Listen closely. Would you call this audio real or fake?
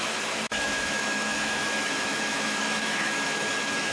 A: fake